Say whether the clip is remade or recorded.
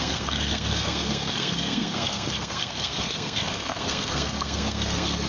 remade